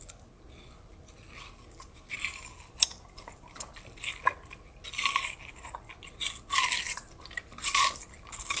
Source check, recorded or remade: recorded